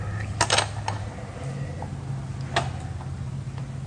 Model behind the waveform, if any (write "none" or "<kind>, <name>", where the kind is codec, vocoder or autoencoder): none